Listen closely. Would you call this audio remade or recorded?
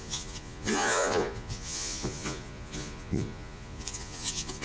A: remade